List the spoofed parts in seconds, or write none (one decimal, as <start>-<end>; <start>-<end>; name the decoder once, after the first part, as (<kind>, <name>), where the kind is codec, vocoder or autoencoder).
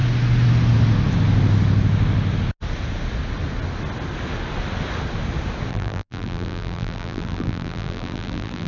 5.7-8.7 (vocoder, BigVGAN v2)